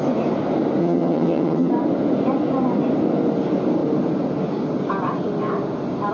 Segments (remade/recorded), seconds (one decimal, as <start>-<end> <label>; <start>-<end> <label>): 0.0-0.8 recorded; 0.8-1.7 remade; 1.7-6.1 recorded